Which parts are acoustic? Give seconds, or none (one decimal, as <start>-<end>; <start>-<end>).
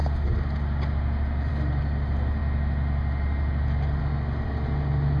0.0-5.2